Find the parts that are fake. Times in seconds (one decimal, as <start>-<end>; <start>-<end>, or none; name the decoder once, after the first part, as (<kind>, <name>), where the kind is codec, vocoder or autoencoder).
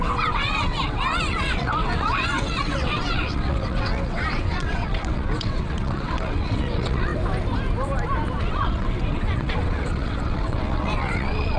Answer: 0.0-7.1 (vocoder, WaveNeXt); 8.4-11.6